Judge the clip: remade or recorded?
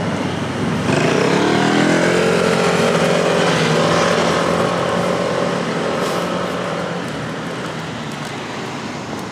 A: recorded